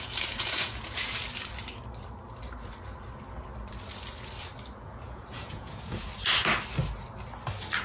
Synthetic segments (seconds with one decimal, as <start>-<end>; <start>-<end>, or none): 0.0-1.2; 4.8-6.1